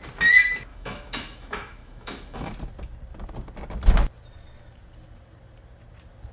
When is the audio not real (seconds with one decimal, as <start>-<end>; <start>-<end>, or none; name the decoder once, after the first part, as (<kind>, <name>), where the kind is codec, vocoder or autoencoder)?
0.7-2.5 (autoencoder, DAC-VAE)